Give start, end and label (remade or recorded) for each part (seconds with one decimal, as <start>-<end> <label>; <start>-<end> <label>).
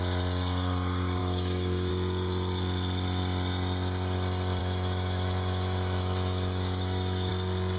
0.0-1.2 recorded; 1.2-1.9 remade; 1.9-4.6 recorded; 4.6-7.3 remade; 7.3-7.8 recorded